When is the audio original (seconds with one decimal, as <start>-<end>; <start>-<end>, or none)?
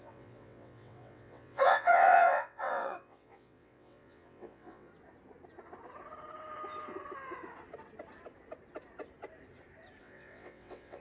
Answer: 4.9-10.0